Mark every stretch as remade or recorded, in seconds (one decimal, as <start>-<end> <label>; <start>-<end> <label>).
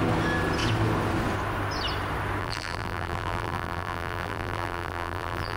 0.0-2.4 recorded; 2.4-5.6 remade